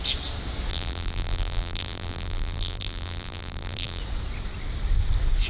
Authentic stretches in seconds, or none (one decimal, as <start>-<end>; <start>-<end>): 0.0-0.7; 4.0-5.5